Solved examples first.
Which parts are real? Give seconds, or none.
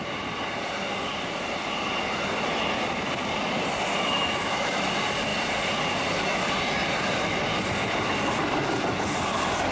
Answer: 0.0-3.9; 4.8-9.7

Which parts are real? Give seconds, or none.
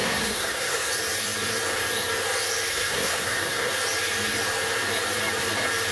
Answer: 0.9-2.7; 3.7-5.9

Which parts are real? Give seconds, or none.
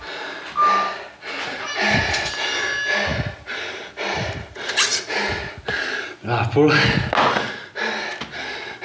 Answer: 0.0-8.8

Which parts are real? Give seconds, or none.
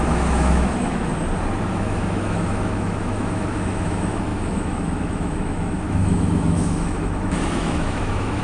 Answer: 1.1-1.7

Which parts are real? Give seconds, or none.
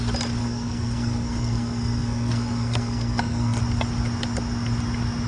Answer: 0.0-0.4; 3.6-5.3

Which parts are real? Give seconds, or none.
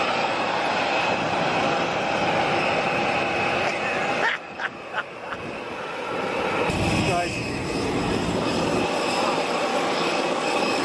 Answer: 0.0-9.7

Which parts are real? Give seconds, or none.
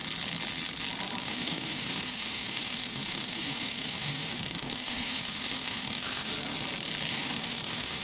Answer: 0.0-1.2; 6.3-7.1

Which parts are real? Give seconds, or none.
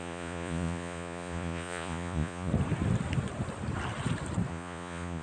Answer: 2.5-4.5